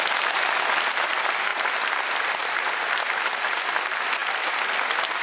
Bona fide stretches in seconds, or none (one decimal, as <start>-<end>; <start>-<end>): 0.0-1.5; 3.2-4.2; 4.8-5.2